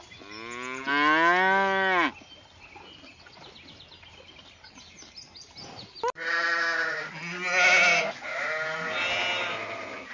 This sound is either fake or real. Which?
real